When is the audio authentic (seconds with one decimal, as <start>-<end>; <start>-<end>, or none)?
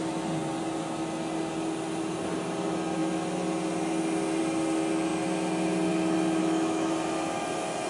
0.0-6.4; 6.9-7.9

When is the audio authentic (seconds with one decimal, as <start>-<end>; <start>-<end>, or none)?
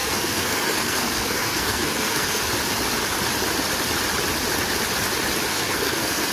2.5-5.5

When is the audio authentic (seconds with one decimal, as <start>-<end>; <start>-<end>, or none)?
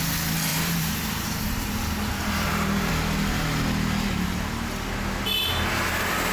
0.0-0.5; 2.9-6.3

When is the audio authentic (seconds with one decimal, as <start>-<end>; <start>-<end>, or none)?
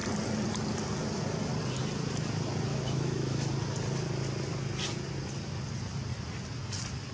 0.0-2.7; 3.5-7.1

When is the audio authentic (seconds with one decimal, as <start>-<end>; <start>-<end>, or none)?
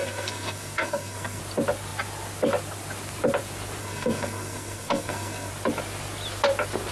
1.4-3.8; 5.5-6.9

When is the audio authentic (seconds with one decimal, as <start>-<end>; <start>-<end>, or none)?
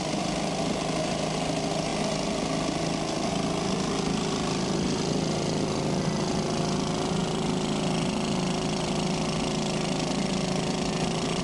0.0-11.4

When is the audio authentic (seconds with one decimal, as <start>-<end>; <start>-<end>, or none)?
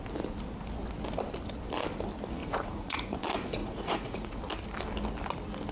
0.0-2.4; 3.2-3.6; 4.4-5.7